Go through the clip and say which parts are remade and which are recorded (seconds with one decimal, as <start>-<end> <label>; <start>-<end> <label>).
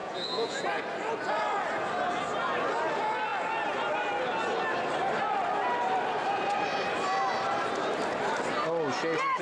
0.0-0.8 remade; 0.8-9.4 recorded